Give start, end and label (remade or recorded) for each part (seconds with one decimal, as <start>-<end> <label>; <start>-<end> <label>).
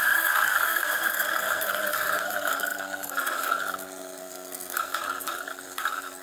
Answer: 0.0-6.2 remade